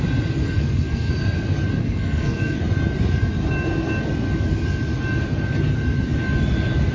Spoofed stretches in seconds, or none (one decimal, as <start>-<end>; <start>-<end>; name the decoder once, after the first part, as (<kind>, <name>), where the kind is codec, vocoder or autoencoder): 0.4-1.1 (codec, SNAC); 1.8-2.6